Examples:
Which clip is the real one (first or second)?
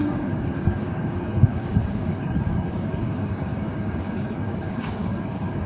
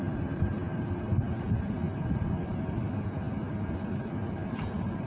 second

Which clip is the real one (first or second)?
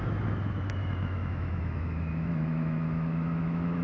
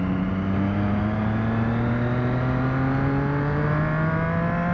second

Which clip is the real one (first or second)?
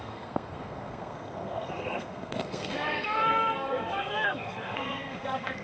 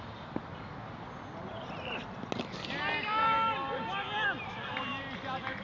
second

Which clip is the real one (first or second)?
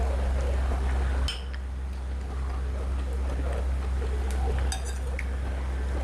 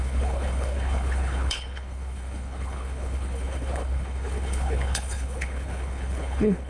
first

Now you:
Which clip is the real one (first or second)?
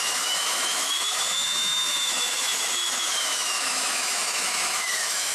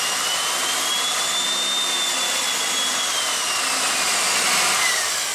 second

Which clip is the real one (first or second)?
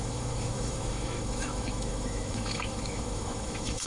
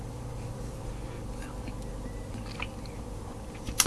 second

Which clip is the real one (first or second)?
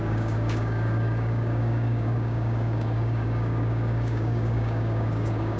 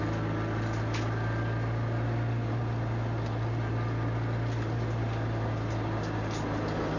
second